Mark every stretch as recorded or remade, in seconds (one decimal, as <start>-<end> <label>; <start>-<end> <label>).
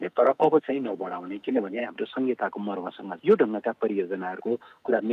0.0-1.8 remade; 1.8-4.4 recorded; 4.4-5.1 remade